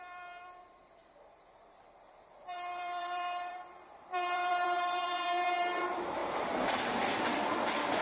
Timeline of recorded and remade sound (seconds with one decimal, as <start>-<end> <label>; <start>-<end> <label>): 0.0-6.2 remade; 6.2-7.2 recorded; 7.2-8.0 remade